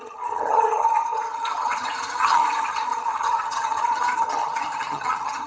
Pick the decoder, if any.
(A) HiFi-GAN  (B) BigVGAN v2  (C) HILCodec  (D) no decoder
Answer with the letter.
A